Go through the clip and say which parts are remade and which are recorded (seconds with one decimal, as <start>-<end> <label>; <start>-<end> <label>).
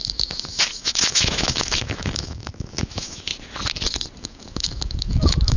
0.0-3.3 remade; 3.3-4.2 recorded; 4.2-5.6 remade